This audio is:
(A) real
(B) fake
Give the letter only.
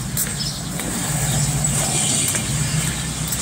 A